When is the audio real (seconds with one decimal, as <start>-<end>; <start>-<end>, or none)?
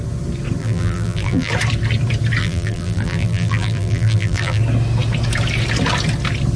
0.0-0.6; 1.5-2.4; 4.6-6.6